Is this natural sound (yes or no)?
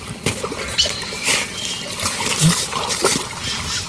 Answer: no